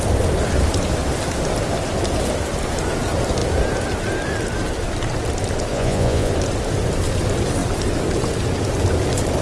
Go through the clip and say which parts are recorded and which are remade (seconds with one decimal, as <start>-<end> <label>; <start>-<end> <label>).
0.0-5.7 recorded; 5.7-6.3 remade; 6.3-9.4 recorded